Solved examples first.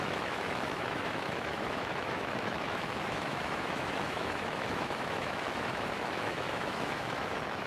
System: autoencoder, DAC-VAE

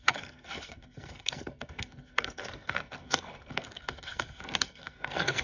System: codec, SNAC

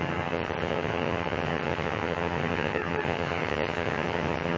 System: vocoder, HiFi-GAN